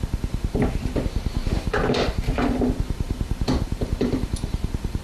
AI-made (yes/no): yes